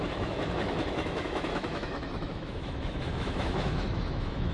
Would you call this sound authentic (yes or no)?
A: no